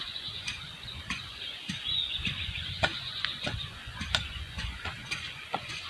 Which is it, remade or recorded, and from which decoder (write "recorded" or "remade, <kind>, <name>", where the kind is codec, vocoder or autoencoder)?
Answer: remade, vocoder, Vocos